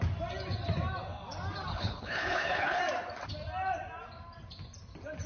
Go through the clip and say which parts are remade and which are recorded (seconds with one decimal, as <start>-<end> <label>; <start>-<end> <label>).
0.0-1.7 recorded; 1.7-2.8 remade; 2.8-5.3 recorded